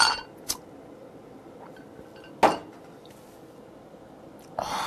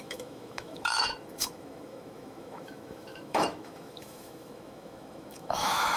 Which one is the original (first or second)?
first